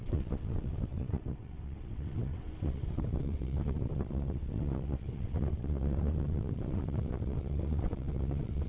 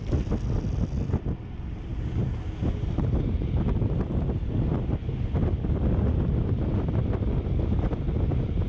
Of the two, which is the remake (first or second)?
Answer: first